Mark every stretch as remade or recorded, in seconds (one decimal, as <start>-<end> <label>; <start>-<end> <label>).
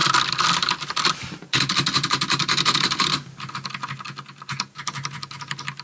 0.0-3.5 remade; 3.5-5.8 recorded